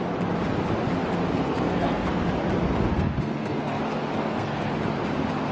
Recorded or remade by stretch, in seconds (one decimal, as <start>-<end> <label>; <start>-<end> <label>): 0.0-1.4 recorded; 1.4-2.2 remade; 2.2-2.9 recorded; 2.9-3.8 remade; 3.8-4.2 recorded; 4.2-4.7 remade; 4.7-5.5 recorded